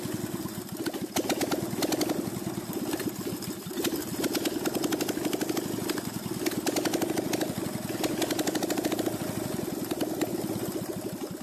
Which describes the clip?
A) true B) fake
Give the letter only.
A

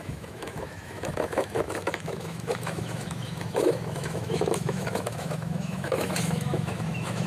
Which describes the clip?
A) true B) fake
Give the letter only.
B